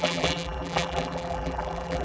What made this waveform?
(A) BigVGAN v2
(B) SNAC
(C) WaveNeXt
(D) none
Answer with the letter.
A